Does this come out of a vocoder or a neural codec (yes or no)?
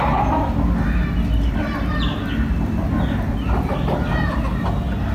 no